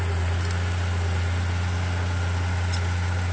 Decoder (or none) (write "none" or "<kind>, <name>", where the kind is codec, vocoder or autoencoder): none